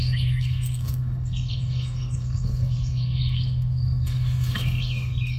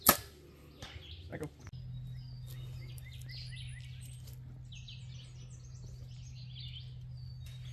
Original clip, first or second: second